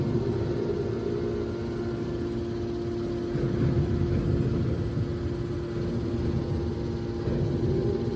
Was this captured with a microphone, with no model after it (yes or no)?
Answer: yes